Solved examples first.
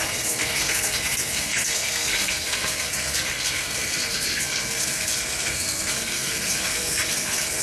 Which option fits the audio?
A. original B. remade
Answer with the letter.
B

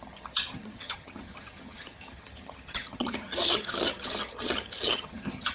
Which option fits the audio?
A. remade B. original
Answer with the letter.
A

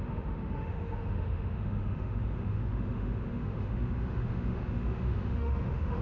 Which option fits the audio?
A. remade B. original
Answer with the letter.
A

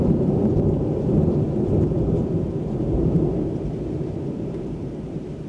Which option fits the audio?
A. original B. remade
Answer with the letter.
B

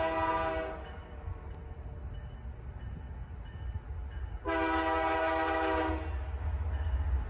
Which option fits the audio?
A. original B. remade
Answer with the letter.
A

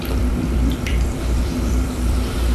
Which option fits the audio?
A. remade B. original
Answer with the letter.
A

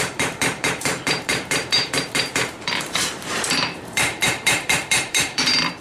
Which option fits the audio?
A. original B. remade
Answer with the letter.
B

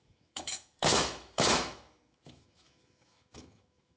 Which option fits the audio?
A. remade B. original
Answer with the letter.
A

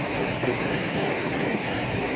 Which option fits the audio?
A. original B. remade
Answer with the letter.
B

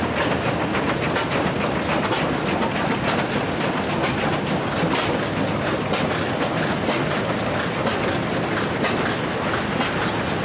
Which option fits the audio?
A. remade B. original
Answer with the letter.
B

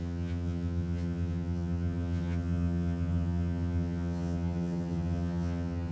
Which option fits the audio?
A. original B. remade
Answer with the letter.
B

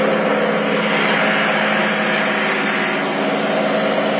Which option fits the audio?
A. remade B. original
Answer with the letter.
B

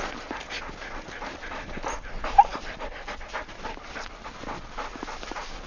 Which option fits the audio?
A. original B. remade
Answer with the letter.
A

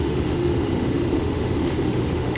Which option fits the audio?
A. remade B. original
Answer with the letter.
A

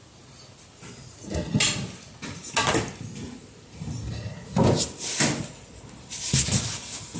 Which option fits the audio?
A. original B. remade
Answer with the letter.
A